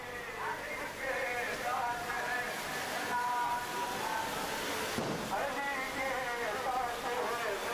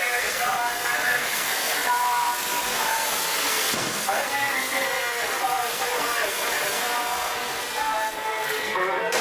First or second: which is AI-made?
second